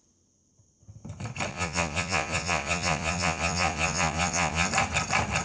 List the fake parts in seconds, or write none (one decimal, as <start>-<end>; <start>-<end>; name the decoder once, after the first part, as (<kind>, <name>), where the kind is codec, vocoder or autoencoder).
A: 1.5-4.7 (vocoder, Vocos)